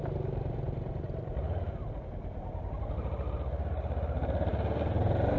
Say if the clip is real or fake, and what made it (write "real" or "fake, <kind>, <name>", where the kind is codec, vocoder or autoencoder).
real